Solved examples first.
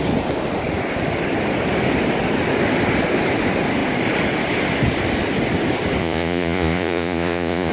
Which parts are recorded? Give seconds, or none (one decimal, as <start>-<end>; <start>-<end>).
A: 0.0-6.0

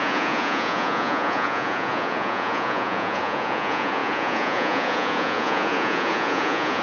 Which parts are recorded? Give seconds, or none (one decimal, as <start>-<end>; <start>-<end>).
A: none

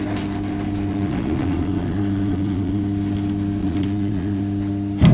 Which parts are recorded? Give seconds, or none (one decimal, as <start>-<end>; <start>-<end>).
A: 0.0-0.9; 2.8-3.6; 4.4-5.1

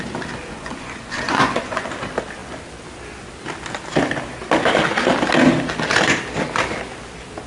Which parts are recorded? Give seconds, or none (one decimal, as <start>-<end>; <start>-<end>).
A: 0.0-0.4; 1.9-7.5

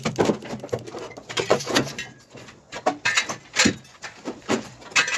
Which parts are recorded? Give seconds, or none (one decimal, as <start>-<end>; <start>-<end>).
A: 0.0-1.2; 2.8-3.9; 4.7-5.2

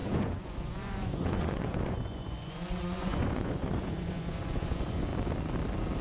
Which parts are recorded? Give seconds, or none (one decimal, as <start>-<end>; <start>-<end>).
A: 5.1-6.0